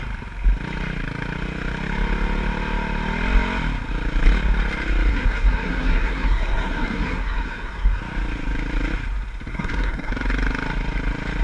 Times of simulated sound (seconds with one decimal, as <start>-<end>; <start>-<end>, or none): 5.1-8.0; 9.5-10.1